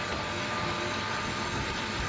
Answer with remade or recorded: recorded